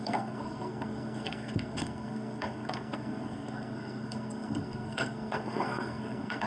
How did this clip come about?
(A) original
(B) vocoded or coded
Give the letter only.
B